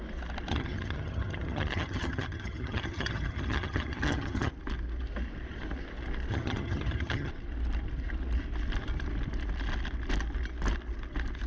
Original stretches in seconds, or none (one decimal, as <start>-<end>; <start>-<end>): 0.0-0.5; 4.5-6.3; 7.3-11.5

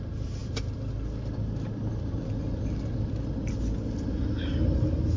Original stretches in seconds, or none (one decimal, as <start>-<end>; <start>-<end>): 0.0-5.2